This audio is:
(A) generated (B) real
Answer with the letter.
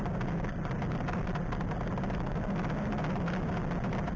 B